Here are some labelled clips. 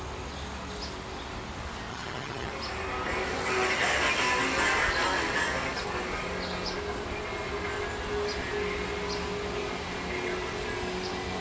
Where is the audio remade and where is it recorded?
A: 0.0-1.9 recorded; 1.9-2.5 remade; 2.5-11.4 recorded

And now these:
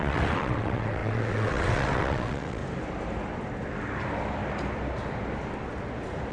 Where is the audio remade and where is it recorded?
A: 0.0-2.6 remade; 2.6-6.3 recorded

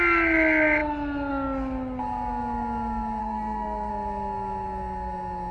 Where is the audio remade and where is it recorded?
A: 0.0-3.2 recorded; 3.2-3.9 remade; 3.9-5.5 recorded

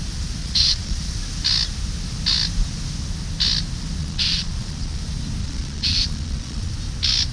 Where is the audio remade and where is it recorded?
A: 0.0-0.4 recorded; 0.4-1.1 remade; 1.1-4.0 recorded; 4.0-5.0 remade; 5.0-5.4 recorded; 5.4-6.7 remade; 6.7-7.3 recorded

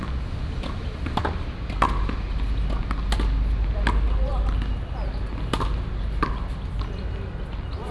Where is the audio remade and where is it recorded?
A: 0.0-7.9 recorded

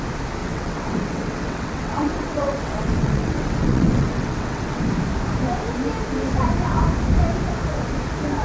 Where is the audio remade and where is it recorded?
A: 0.0-0.4 recorded; 0.4-4.8 remade; 4.8-8.4 recorded

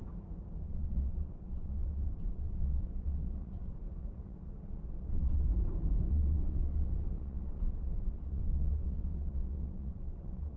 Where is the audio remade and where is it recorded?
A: 0.0-0.6 recorded; 0.6-5.5 remade; 5.5-6.1 recorded; 6.1-10.6 remade